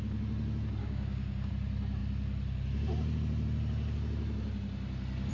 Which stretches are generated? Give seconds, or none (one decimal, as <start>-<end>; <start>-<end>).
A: 0.8-1.5